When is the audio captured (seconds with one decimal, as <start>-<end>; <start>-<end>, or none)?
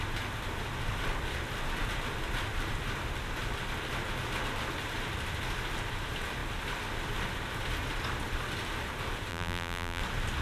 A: 0.0-9.3; 10.0-10.4